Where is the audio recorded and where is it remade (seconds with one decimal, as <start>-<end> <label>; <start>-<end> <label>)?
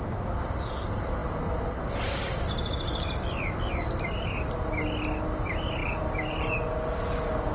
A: 0.0-7.5 recorded